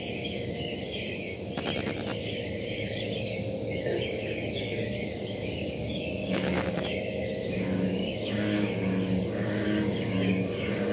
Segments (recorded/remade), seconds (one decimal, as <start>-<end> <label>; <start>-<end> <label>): 0.0-1.3 remade; 1.3-2.2 recorded; 2.2-10.9 remade